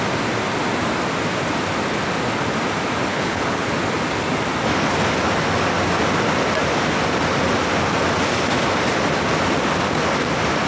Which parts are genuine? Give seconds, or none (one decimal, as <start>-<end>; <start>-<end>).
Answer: 0.0-3.1; 3.7-10.7